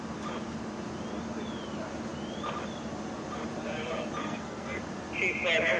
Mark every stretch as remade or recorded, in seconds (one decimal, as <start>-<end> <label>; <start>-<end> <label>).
0.0-4.2 recorded; 4.2-4.8 remade; 4.8-5.8 recorded